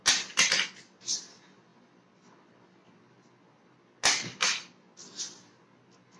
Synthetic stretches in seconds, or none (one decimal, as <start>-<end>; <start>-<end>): none